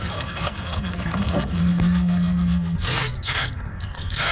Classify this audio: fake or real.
fake